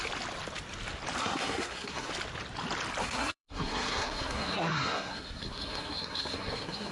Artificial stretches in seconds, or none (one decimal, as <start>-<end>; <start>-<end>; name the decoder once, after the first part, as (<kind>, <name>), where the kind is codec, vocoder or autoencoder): 1.2-2.1 (codec, SNAC); 3.0-6.9